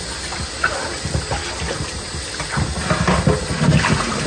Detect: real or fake real